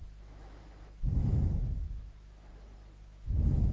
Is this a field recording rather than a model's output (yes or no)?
no